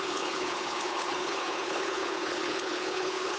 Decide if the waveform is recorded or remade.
remade